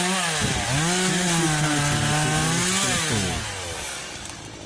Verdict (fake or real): real